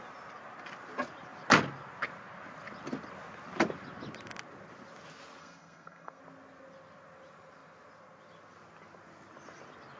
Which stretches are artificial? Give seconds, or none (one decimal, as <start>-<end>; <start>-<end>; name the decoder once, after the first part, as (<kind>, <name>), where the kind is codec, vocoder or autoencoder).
5.4-6.2 (codec, SNAC)